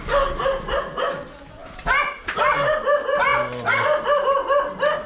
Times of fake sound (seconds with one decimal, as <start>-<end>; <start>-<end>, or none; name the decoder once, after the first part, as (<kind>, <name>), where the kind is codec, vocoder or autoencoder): none